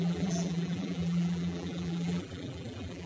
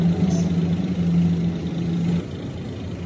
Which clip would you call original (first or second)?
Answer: second